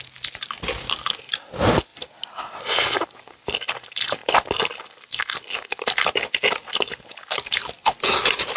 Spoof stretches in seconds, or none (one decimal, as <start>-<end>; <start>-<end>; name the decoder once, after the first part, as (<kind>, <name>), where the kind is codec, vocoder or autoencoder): none